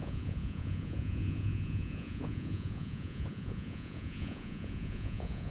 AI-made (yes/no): yes